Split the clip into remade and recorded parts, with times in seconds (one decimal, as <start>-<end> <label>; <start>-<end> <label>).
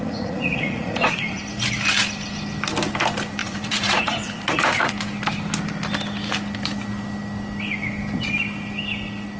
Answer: 0.0-1.4 remade; 1.4-3.4 recorded; 3.4-4.9 remade; 4.9-9.4 recorded